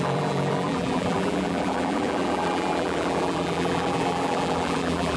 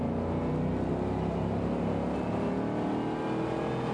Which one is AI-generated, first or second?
first